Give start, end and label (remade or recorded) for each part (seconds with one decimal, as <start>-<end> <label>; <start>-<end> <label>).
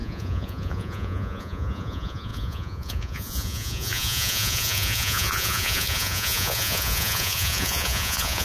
0.0-8.4 remade